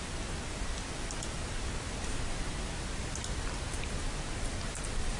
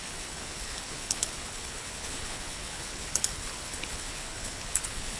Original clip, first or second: first